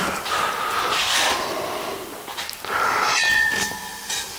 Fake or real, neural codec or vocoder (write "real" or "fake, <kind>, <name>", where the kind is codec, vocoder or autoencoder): fake, vocoder, BigVGAN v2